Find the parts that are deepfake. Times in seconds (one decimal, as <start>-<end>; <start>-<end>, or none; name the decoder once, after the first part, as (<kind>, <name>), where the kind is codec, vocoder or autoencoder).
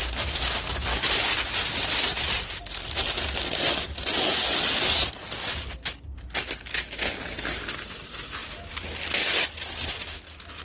4.4-5.2 (vocoder, BigVGAN v2); 8.4-9.3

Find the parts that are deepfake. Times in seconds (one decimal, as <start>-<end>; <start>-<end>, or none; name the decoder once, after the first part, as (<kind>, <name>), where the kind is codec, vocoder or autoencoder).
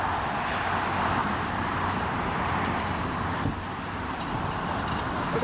1.2-4.4 (vocoder, BigVGAN v2)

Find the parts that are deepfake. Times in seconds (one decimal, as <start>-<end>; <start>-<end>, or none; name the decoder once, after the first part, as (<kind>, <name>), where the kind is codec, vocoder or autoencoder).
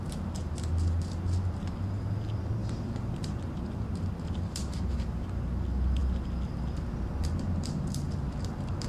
2.6-3.4 (vocoder, BigVGAN v2)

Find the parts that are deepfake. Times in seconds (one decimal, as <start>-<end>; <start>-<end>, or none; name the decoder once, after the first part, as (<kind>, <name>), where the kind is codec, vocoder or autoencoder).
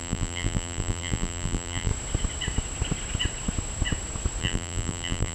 0.0-1.9 (vocoder, BigVGAN v2); 4.4-5.3